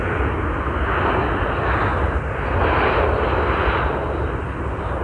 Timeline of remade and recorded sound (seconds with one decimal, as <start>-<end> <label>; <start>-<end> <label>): 0.0-5.0 recorded